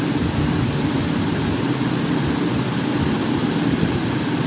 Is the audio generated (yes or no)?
no